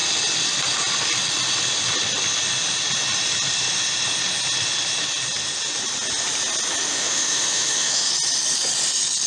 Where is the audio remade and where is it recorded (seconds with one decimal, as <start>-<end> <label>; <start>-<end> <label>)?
0.0-6.9 recorded; 6.9-8.1 remade; 8.1-9.3 recorded